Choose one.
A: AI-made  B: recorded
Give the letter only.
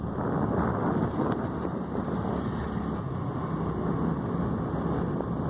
B